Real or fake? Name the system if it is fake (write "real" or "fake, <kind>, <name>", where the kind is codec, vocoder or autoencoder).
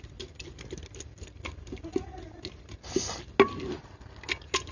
real